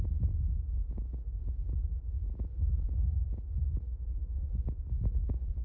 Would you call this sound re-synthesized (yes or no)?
no